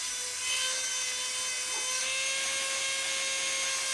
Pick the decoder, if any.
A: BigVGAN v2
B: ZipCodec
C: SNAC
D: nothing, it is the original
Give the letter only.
D